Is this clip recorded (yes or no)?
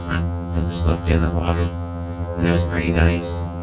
no